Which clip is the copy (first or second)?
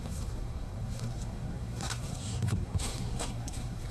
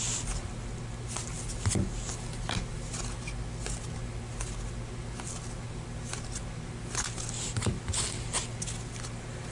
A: first